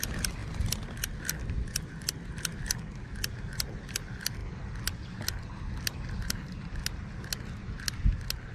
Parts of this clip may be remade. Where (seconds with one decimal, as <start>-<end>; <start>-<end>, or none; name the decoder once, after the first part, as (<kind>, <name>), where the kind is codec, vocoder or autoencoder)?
none